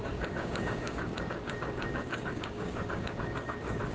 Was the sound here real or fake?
fake